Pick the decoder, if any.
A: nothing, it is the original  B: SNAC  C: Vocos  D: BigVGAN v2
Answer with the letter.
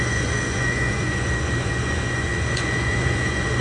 C